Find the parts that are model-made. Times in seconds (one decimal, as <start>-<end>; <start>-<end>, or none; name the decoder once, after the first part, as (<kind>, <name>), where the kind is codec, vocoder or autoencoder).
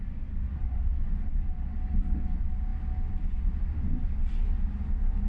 none